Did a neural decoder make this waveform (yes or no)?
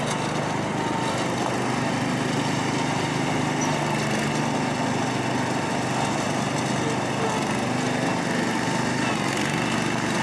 no